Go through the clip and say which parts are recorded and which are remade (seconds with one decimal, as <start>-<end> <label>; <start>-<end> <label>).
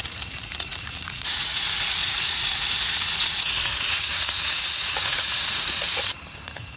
0.0-6.8 remade